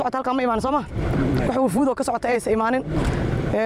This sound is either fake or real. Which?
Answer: fake